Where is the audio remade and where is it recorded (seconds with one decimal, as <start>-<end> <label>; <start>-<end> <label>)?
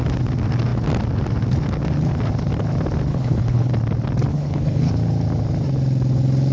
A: 0.0-3.1 recorded; 3.1-3.7 remade; 3.7-4.3 recorded; 4.3-4.9 remade; 4.9-6.5 recorded